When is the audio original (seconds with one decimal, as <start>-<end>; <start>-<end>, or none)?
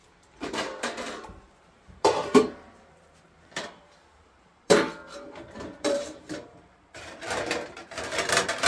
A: 5.0-5.5